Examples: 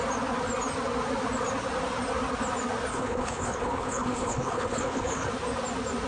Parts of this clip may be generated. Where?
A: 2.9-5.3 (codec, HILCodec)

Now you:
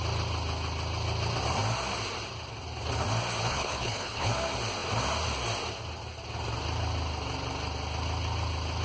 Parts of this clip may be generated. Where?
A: 3.5-4.3 (codec, HILCodec)

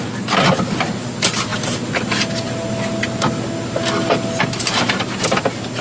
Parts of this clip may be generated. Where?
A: none

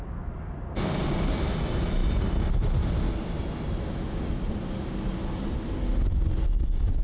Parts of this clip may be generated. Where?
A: none

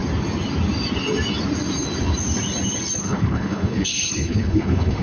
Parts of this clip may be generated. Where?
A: 3.0-5.0 (codec, HILCodec)

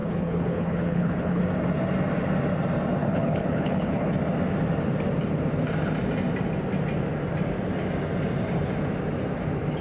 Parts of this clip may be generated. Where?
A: 0.0-1.4 (codec, HILCodec); 3.0-4.1